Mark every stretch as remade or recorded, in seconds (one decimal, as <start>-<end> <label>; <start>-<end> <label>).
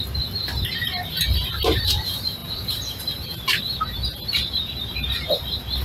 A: 0.0-5.8 remade